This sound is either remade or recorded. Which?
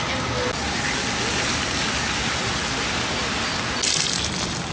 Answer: recorded